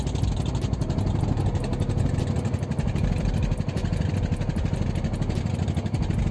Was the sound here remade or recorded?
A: recorded